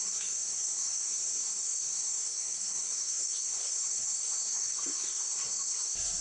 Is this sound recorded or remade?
remade